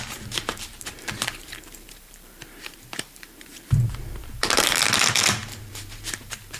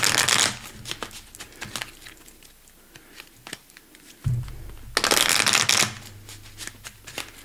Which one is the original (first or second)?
second